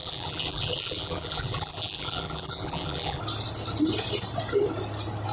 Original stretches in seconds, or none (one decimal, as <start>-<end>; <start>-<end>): 3.2-5.3